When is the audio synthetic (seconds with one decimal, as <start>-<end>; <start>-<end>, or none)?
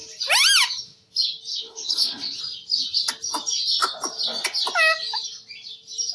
1.5-2.4